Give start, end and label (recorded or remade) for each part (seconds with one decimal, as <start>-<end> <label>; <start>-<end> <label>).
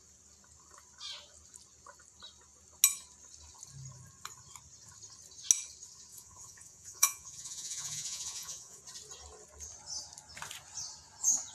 0.0-6.1 recorded; 6.1-8.8 remade; 8.8-11.5 recorded